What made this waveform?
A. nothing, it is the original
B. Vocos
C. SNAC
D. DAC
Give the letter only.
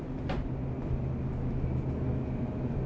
A